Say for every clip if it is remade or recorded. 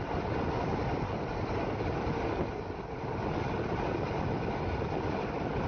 recorded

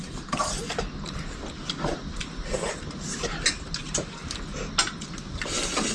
recorded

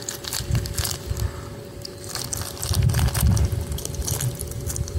recorded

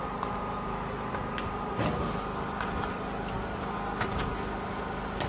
recorded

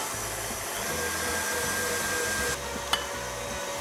recorded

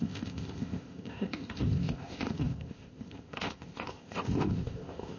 remade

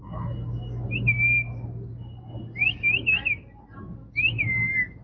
recorded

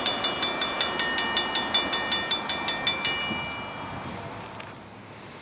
recorded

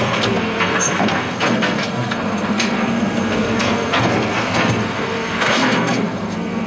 remade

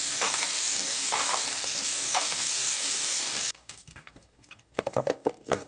remade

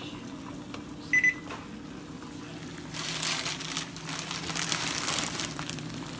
recorded